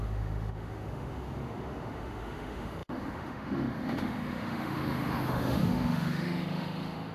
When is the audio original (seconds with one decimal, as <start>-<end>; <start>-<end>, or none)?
none